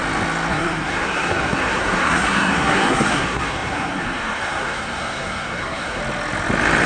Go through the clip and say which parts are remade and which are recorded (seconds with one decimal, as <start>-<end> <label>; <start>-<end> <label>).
0.0-0.5 recorded; 0.5-6.0 remade; 6.0-6.9 recorded